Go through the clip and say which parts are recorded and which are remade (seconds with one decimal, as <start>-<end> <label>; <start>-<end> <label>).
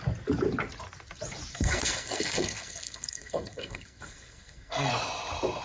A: 0.0-1.5 recorded; 1.5-4.9 remade; 4.9-5.6 recorded